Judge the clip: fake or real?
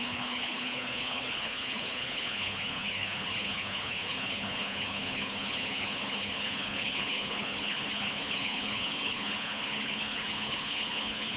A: fake